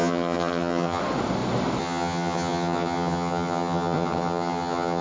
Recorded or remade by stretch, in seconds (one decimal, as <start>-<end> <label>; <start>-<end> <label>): 0.0-1.0 remade; 1.0-1.8 recorded; 1.8-5.0 remade